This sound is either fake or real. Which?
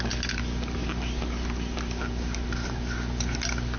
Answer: real